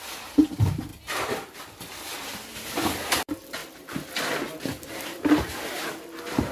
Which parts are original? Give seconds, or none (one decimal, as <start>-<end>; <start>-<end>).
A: 0.9-2.1; 3.6-4.9